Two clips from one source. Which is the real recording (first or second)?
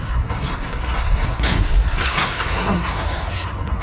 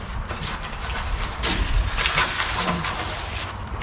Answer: second